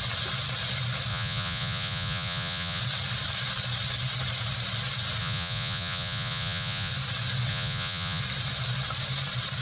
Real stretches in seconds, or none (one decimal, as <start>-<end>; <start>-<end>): 0.0-1.1; 2.8-5.2; 6.9-7.5; 8.2-9.6